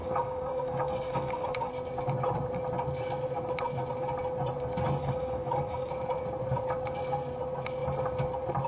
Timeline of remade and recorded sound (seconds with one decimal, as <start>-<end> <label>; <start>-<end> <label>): 0.0-1.7 remade; 1.7-5.0 recorded; 5.0-5.9 remade; 5.9-8.7 recorded